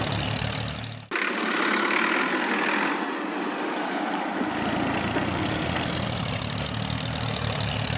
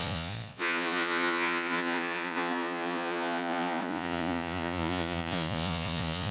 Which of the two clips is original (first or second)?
first